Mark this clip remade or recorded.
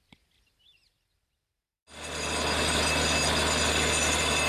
recorded